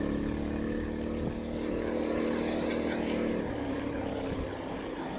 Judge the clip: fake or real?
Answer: real